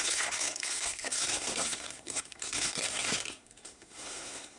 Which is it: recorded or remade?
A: remade